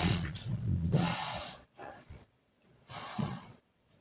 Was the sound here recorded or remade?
remade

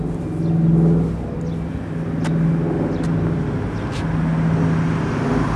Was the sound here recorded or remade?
recorded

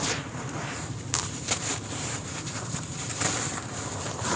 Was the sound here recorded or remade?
remade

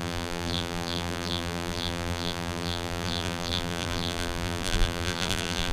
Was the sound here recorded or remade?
remade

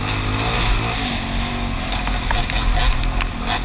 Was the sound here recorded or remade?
recorded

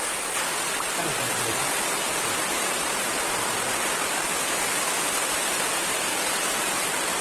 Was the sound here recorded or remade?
recorded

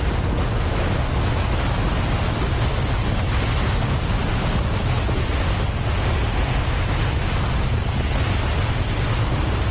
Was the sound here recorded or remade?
recorded